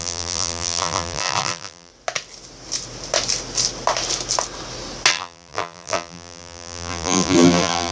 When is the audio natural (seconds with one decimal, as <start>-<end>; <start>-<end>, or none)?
1.9-5.1